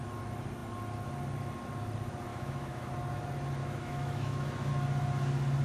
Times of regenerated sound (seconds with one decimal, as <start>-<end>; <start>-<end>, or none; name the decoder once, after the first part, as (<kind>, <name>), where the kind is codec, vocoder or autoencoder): 2.3-2.9 (autoencoder, DAC-VAE); 3.6-4.7